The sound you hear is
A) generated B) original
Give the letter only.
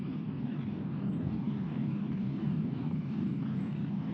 A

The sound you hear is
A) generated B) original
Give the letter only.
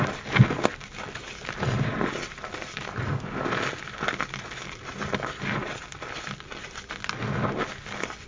B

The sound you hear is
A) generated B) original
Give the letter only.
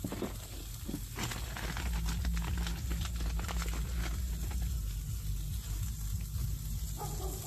B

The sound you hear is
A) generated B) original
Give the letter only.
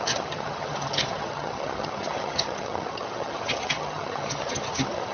A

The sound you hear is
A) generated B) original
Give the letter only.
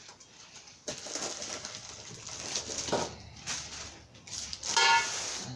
B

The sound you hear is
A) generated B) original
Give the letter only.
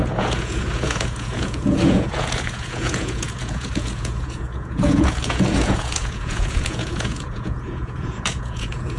A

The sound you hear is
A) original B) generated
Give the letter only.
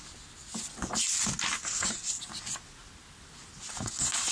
A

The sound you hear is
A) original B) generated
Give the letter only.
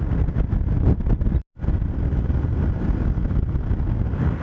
A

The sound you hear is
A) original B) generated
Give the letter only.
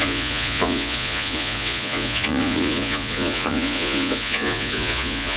B